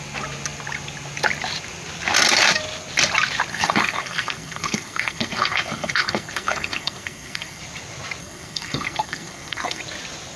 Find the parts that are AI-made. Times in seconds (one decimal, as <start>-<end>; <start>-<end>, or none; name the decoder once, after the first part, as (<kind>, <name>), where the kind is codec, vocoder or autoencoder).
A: 3.5-7.6 (codec, SNAC); 8.2-9.8